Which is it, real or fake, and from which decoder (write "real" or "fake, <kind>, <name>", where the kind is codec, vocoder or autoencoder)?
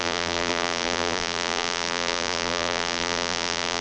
fake, vocoder, BigVGAN v2